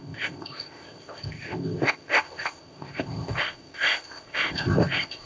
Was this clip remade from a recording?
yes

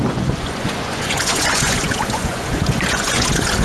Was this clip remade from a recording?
yes